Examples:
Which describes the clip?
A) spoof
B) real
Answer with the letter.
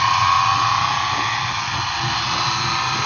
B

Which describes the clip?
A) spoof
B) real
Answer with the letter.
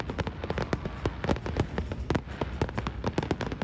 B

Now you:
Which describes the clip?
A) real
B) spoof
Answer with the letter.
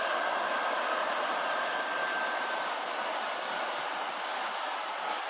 A